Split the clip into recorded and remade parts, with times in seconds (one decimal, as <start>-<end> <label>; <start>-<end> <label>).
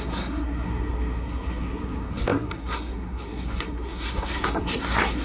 0.0-5.2 remade